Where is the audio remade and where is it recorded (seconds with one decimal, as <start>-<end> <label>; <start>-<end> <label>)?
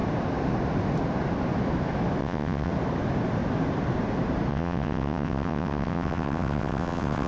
0.0-2.2 recorded; 2.2-2.7 remade; 2.7-4.5 recorded; 4.5-7.3 remade